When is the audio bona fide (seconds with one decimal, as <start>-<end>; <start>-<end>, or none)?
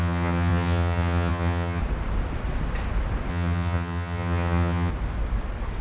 1.8-3.3; 4.9-5.8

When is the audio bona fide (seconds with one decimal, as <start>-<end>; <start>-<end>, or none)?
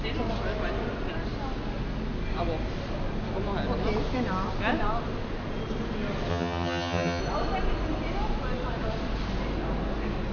0.0-6.3; 7.2-10.3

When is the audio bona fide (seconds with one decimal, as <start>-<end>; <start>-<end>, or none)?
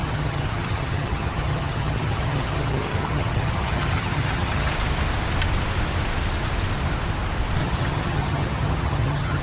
4.7-7.6